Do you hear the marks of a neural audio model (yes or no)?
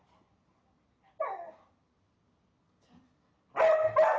no